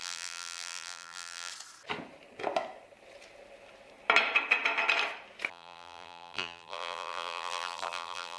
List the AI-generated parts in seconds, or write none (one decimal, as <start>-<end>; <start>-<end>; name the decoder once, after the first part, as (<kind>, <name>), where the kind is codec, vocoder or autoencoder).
0.0-1.5 (vocoder, BigVGAN v2); 5.5-8.4